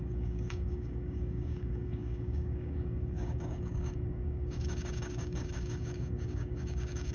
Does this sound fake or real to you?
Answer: fake